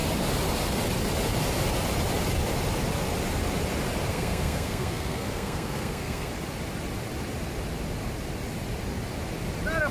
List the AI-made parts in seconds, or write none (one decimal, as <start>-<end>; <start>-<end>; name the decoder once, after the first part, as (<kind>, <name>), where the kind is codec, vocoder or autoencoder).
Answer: 4.1-6.3 (codec, SNAC)